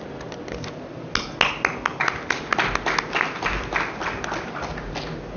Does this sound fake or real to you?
real